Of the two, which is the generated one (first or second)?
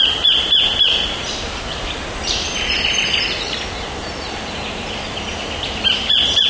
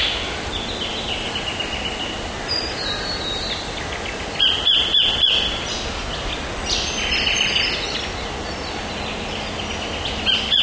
first